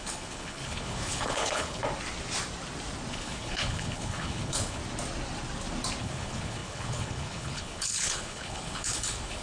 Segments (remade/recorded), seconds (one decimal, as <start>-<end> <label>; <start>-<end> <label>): 0.0-1.8 remade; 1.8-3.1 recorded; 3.1-4.8 remade; 4.8-6.0 recorded; 6.0-9.4 remade